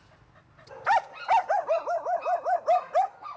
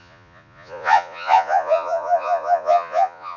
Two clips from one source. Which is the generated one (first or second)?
second